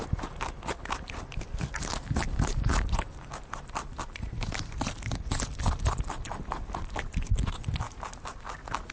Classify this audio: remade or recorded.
recorded